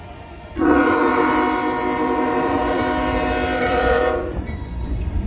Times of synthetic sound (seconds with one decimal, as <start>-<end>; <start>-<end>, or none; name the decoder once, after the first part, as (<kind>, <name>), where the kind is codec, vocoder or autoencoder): 0.0-1.1 (vocoder, Vocos); 2.4-2.8; 3.6-5.3